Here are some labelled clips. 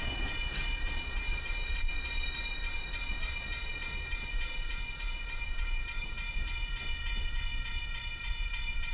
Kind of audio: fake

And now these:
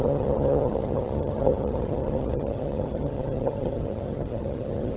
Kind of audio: fake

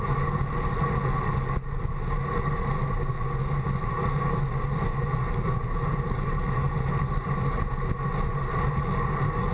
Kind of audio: real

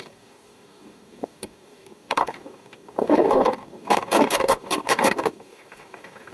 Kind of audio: fake